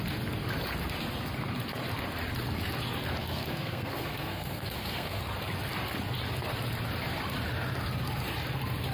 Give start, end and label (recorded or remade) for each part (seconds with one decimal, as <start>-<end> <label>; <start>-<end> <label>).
0.0-3.2 recorded; 3.2-5.2 remade; 5.2-8.9 recorded